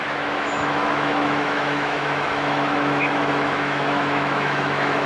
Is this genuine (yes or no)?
no